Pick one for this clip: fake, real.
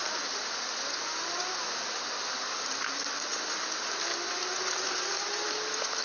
real